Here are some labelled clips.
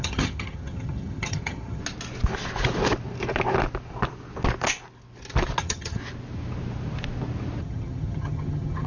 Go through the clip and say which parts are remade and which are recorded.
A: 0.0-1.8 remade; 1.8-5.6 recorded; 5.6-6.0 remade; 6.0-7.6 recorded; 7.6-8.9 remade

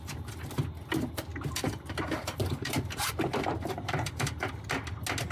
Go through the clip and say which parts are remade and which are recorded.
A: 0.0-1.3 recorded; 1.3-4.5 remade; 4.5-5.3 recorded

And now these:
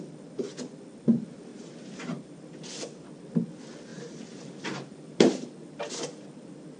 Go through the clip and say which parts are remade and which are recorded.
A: 0.0-1.5 recorded; 1.5-2.4 remade; 2.4-3.9 recorded; 3.9-5.5 remade; 5.5-6.8 recorded

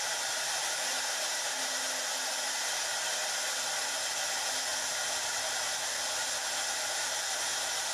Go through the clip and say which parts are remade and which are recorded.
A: 0.0-7.9 recorded